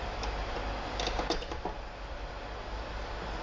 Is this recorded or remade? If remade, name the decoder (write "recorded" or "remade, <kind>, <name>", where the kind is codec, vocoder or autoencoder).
recorded